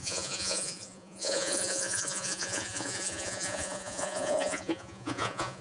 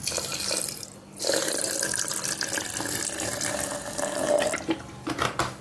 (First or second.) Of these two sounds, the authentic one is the second